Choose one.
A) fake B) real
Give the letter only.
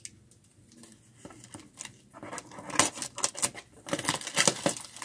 B